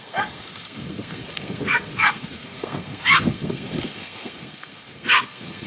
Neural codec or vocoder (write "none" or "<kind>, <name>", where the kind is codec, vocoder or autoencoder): codec, SNAC